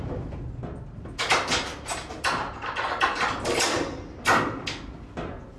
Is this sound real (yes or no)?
yes